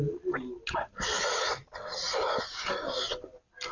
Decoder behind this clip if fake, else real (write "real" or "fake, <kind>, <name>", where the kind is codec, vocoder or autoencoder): real